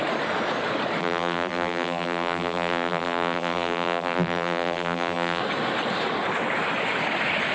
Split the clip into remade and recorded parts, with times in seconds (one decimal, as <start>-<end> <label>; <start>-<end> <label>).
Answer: 0.0-1.0 recorded; 1.0-5.4 remade; 5.4-7.5 recorded